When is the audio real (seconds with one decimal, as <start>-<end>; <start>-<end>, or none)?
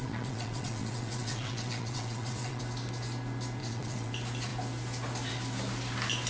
2.6-3.6; 4.1-6.3